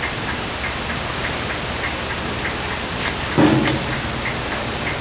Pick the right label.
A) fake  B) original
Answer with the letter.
B